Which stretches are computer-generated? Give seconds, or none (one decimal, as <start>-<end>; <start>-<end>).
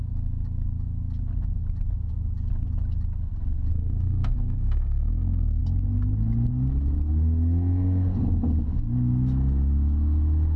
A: 3.7-5.6